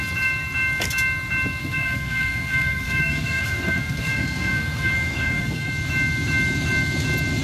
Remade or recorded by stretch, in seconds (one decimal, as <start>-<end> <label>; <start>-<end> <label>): 0.0-1.6 recorded; 1.6-5.7 remade; 5.7-7.4 recorded